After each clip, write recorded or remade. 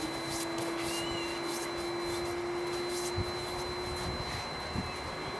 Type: recorded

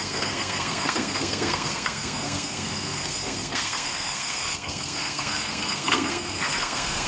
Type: remade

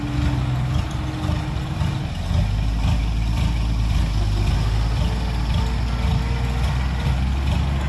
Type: recorded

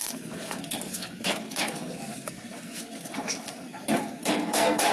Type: remade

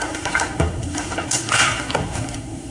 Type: remade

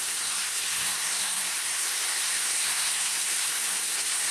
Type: remade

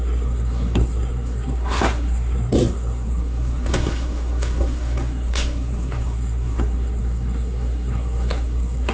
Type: remade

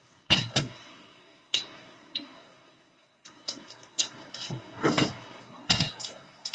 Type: remade